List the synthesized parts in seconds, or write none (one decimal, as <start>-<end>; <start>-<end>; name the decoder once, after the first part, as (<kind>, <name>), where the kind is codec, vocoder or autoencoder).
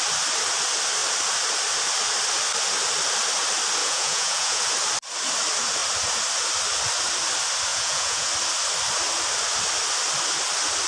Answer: 3.8-4.6 (vocoder, Vocos); 7.7-8.3